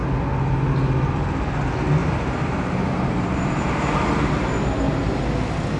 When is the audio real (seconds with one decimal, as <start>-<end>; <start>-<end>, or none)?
0.0-2.0; 5.2-5.8